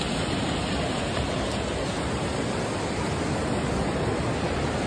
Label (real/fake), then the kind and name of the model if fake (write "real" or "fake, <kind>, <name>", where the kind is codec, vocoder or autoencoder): real